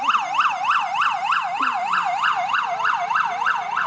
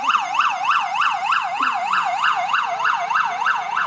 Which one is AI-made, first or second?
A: second